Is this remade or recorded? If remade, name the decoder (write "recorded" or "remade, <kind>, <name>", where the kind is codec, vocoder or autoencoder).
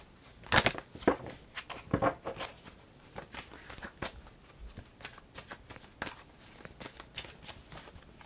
recorded